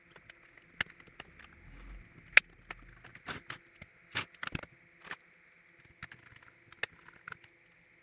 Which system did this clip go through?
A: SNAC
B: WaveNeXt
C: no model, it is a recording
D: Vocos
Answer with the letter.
C